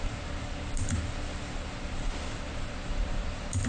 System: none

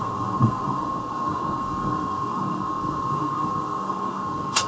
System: codec, SNAC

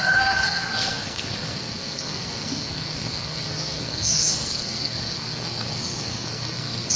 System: codec, SNAC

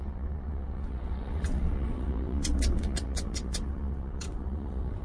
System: vocoder, WaveNeXt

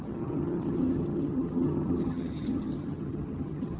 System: vocoder, HiFi-GAN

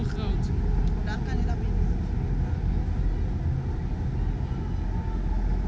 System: none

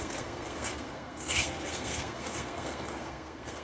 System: codec, SNAC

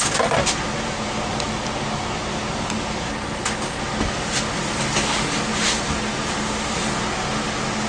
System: none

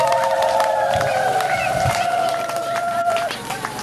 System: vocoder, BigVGAN v2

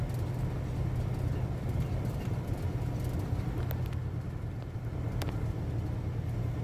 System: none